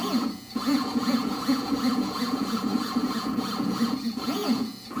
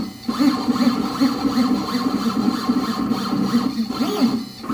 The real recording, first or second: second